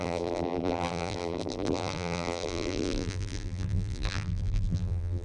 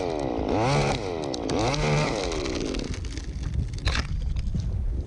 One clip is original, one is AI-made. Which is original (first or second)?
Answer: second